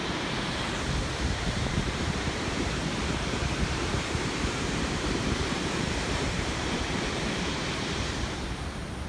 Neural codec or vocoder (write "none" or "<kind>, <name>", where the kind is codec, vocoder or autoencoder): vocoder, BigVGAN v2